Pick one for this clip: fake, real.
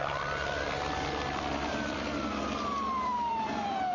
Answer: real